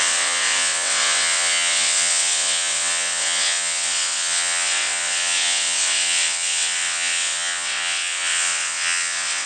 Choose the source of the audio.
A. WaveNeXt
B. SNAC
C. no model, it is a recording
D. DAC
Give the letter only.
A